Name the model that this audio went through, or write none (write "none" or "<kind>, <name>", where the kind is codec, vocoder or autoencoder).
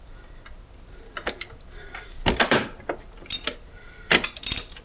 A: none